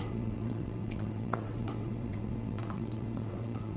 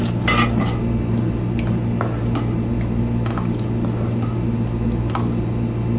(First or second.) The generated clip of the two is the first